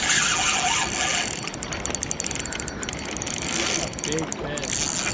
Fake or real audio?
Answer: real